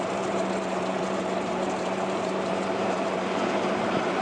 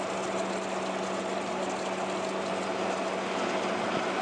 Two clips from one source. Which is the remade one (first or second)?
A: first